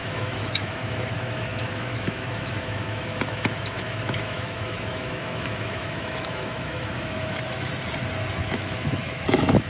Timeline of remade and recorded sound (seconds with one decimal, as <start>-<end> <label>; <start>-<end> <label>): 0.0-7.7 remade; 7.7-8.4 recorded; 8.4-9.7 remade